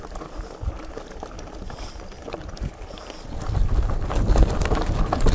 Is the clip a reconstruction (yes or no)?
no